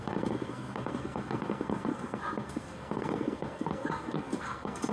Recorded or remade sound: remade